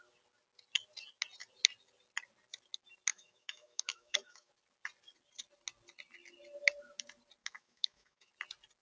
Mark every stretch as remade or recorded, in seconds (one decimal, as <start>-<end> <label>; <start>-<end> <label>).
0.0-3.1 recorded; 3.1-4.5 remade; 4.5-7.4 recorded; 7.4-8.3 remade; 8.3-8.8 recorded